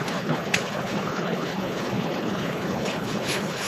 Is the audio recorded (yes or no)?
no